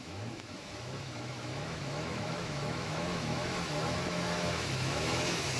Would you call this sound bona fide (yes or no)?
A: no